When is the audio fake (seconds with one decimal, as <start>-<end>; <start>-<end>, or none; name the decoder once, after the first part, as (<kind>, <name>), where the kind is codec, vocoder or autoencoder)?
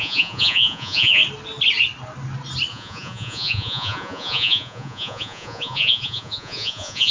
0.0-1.2 (vocoder, Vocos); 2.7-7.1